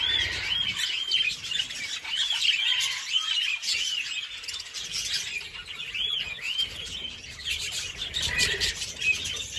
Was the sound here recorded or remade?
recorded